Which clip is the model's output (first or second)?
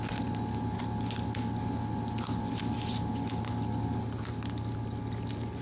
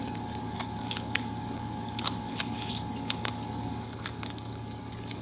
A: second